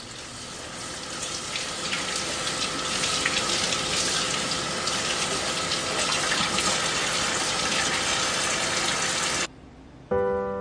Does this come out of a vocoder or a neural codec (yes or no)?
no